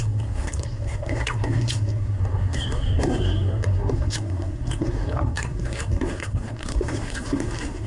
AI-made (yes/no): yes